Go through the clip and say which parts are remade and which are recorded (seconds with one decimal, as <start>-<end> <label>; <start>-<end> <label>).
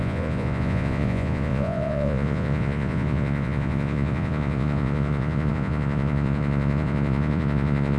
0.0-8.0 remade